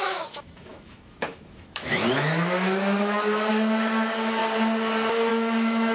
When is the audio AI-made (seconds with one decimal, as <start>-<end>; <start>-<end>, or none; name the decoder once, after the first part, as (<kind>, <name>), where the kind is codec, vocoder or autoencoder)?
0.0-4.4 (autoencoder, DAC-VAE); 5.3-5.9